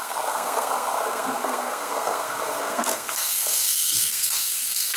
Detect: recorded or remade remade